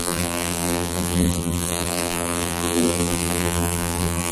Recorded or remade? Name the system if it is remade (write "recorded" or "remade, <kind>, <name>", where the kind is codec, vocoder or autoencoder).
remade, vocoder, BigVGAN v2